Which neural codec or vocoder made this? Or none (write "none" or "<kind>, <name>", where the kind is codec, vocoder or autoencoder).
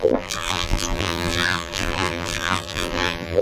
vocoder, BigVGAN v2